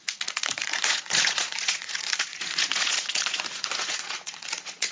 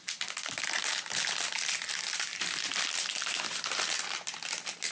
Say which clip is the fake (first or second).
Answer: first